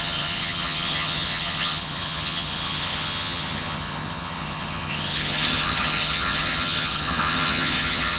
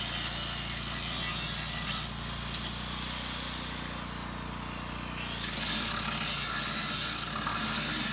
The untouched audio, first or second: second